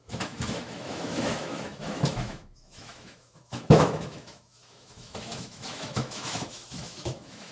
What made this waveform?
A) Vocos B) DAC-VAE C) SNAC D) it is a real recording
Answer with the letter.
B